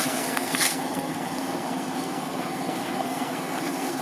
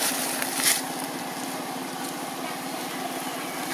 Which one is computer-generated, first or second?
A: first